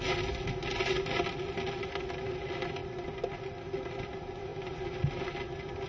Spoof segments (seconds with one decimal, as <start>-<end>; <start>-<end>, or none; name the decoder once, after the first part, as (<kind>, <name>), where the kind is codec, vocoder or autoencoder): none